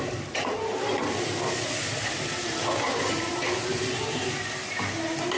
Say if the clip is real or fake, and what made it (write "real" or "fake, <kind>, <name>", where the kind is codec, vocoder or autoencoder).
real